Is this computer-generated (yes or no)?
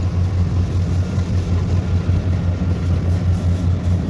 no